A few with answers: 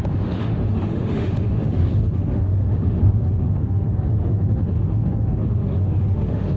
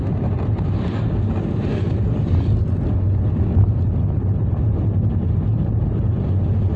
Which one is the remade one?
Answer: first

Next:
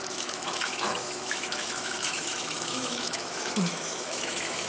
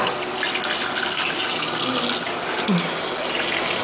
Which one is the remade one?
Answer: first